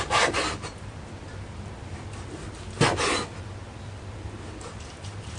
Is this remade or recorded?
recorded